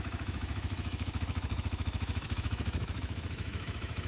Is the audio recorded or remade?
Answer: remade